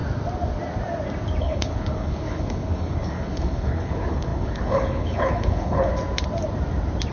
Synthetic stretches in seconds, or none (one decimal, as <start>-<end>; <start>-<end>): 1.4-5.9